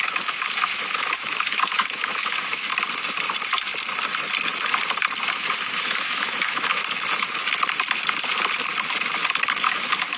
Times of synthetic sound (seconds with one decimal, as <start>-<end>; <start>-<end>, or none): 0.0-2.7; 5.3-6.8; 9.5-10.2